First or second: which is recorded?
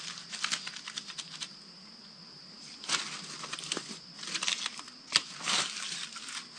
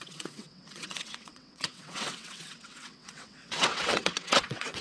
first